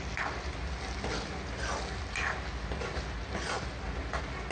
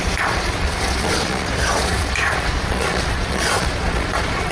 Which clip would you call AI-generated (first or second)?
second